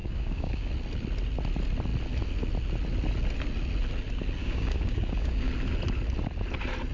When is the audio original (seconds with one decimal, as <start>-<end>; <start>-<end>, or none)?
0.7-4.4; 5.5-6.9